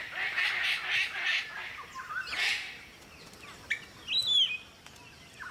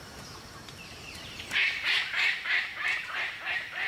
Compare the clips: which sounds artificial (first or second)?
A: second